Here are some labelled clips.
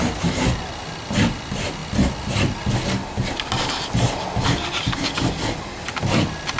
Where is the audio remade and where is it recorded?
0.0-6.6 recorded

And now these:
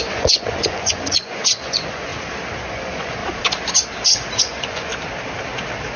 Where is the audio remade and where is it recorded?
0.0-2.1 remade; 2.1-2.7 recorded; 2.7-3.2 remade; 3.2-4.4 recorded; 4.4-4.9 remade; 4.9-6.0 recorded

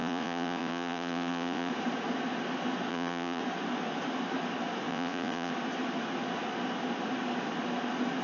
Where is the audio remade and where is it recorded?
0.0-1.7 remade; 1.7-2.9 recorded; 2.9-3.4 remade; 3.4-4.9 recorded; 4.9-5.5 remade; 5.5-8.2 recorded

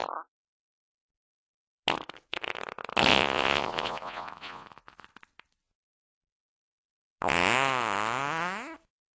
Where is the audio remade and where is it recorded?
0.0-3.1 recorded; 3.1-5.1 remade; 5.1-9.2 recorded